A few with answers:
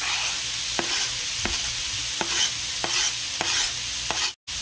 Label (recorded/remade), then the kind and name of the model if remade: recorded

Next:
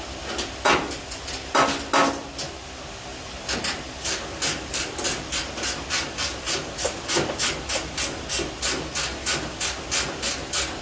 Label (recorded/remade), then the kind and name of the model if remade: recorded